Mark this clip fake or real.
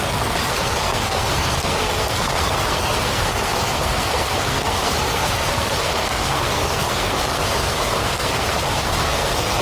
fake